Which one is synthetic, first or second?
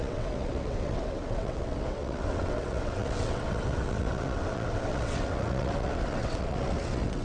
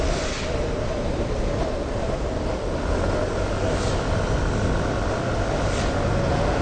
first